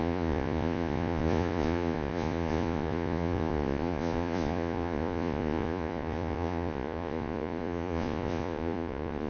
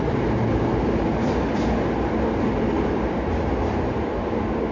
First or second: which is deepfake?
first